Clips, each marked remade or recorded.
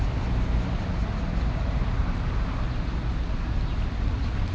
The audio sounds recorded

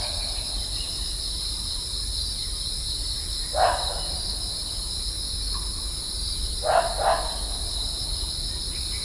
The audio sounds recorded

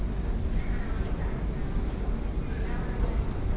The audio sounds recorded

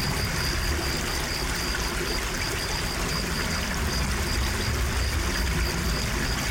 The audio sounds recorded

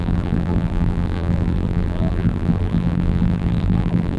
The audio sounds remade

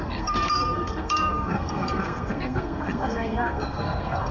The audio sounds remade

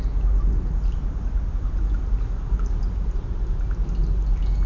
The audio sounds recorded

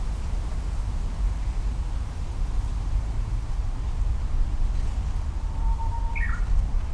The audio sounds recorded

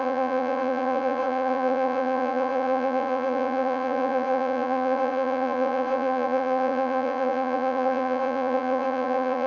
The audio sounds remade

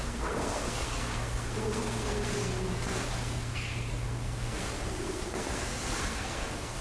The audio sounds remade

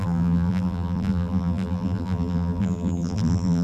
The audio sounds remade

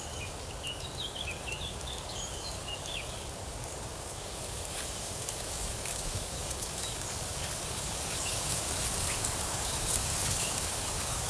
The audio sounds remade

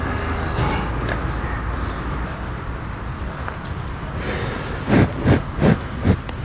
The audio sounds recorded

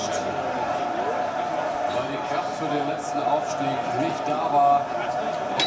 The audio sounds recorded